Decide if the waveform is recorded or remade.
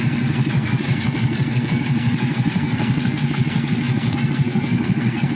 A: remade